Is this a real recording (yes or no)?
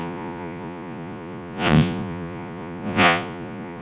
no